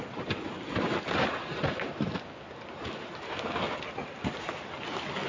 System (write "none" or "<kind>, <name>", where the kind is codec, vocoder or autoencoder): none